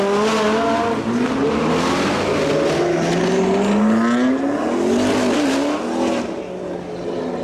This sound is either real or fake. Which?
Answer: real